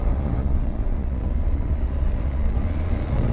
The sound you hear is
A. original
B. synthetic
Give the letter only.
B